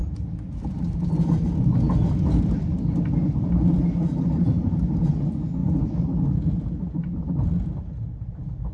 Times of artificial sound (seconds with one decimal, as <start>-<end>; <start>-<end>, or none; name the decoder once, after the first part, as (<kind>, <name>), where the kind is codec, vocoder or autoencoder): none